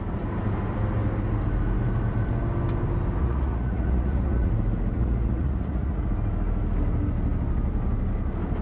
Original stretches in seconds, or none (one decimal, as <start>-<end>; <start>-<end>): 0.0-3.2; 4.5-4.9; 6.1-8.6